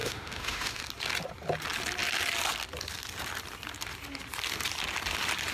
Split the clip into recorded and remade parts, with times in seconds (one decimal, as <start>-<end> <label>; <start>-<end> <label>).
0.0-0.8 remade; 0.8-5.5 recorded